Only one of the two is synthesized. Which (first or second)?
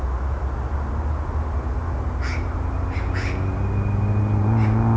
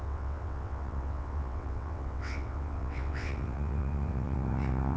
second